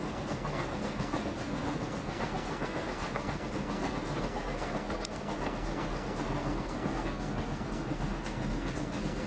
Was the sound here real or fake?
fake